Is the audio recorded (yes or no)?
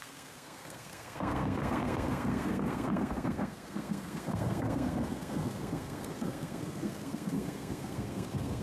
no